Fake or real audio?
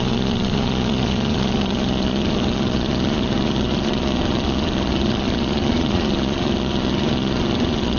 fake